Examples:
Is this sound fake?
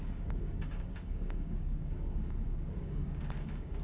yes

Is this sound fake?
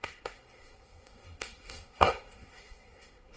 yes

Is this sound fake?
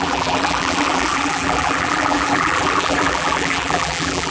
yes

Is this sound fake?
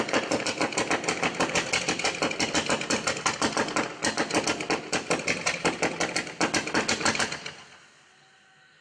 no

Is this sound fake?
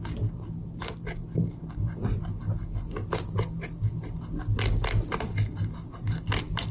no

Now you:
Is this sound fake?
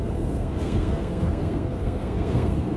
yes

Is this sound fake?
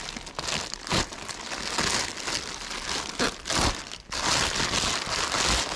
no